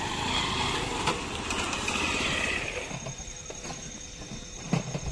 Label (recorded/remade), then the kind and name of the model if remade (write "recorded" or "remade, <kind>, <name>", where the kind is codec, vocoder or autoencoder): recorded